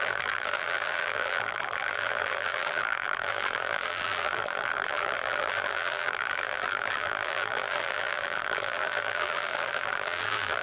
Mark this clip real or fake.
fake